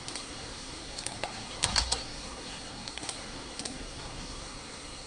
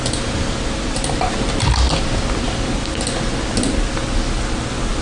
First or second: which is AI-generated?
first